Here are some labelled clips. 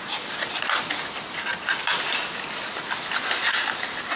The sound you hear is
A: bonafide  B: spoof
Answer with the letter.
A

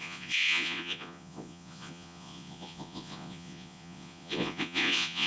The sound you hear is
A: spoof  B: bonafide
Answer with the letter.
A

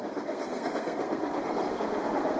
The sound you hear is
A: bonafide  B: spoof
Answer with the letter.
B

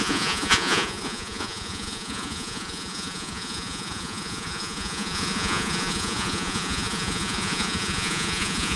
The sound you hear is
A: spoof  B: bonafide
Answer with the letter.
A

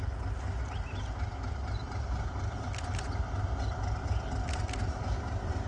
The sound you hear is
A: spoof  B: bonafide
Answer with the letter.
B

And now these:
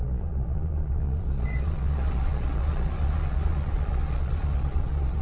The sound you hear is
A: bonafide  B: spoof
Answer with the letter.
B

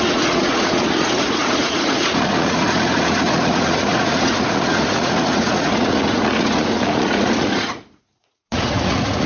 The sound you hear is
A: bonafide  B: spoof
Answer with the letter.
B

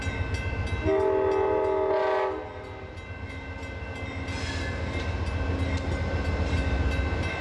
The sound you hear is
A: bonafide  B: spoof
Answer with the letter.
A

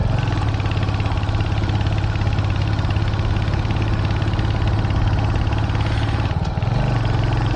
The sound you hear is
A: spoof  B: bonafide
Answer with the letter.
B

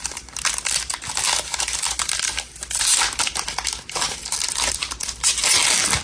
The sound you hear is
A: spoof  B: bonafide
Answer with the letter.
B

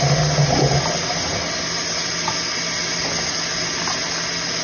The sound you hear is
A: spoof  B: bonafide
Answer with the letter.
B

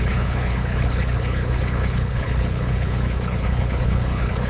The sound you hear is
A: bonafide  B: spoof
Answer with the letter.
B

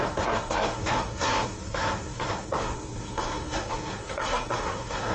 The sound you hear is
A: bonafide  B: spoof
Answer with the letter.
B